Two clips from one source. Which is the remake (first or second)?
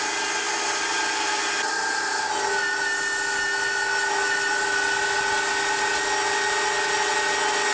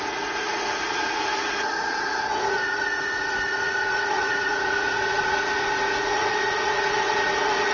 second